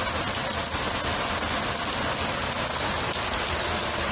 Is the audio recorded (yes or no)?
yes